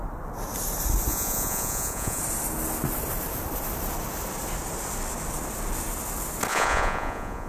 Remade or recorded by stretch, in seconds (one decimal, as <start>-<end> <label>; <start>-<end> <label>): 0.0-1.1 recorded; 1.1-2.2 remade; 2.2-6.5 recorded; 6.5-7.5 remade